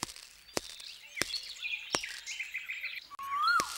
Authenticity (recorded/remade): recorded